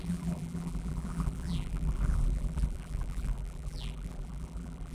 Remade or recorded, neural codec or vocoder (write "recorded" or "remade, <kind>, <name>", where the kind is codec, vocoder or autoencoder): remade, vocoder, BigVGAN v2